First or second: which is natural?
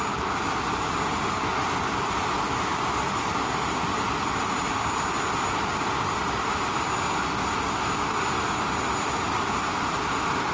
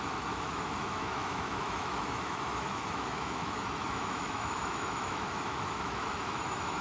first